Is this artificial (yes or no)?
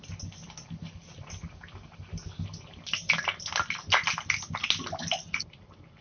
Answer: no